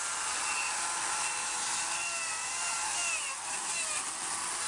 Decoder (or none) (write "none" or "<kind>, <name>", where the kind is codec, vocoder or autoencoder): none